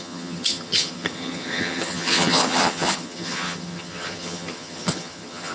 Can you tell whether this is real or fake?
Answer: fake